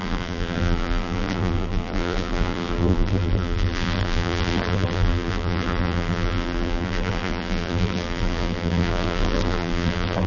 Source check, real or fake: fake